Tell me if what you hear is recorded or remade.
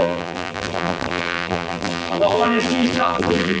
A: remade